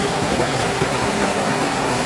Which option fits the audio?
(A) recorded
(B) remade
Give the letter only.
B